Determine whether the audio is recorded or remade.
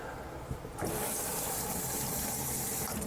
recorded